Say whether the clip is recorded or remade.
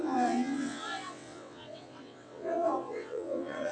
remade